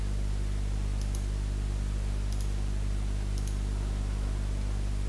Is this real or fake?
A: real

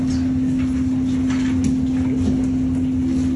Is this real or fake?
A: real